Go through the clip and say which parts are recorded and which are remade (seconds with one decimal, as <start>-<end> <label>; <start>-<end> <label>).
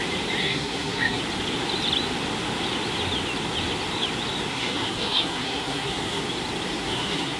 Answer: 0.0-0.4 recorded; 0.4-1.2 remade; 1.2-4.5 recorded; 4.5-6.2 remade; 6.2-6.8 recorded; 6.8-7.4 remade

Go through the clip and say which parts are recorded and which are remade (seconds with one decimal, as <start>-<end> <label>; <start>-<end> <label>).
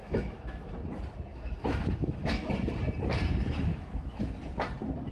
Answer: 0.0-0.7 remade; 0.7-1.3 recorded; 1.3-2.5 remade; 2.5-3.7 recorded; 3.7-4.2 remade; 4.2-5.1 recorded